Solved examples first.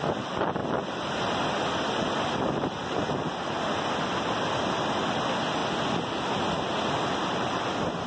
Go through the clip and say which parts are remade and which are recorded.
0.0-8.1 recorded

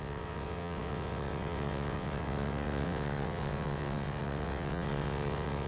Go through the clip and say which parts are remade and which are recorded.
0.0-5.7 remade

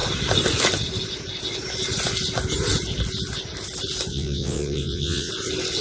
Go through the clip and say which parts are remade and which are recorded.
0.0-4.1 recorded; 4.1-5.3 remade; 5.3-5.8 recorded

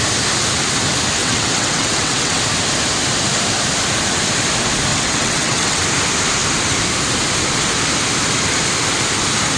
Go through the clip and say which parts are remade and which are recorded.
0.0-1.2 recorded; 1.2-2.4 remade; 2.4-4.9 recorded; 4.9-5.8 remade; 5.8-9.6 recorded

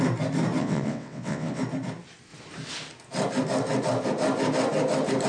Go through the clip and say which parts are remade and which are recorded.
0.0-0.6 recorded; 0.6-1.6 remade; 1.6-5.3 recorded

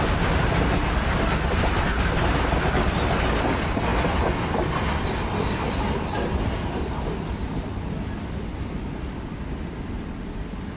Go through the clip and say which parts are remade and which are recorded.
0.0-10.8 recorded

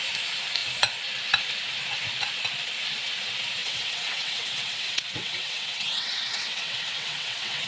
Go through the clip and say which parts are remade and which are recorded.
0.0-3.6 recorded; 3.6-7.7 remade

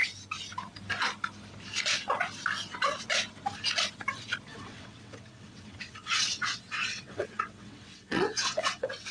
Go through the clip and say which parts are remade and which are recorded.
0.0-4.5 recorded; 4.5-9.1 remade